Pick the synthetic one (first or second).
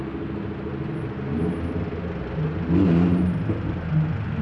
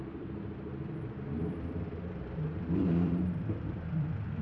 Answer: second